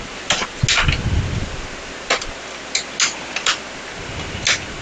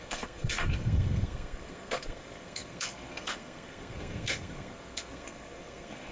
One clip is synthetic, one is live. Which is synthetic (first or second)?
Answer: second